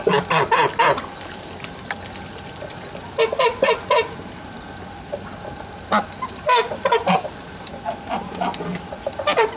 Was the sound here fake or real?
real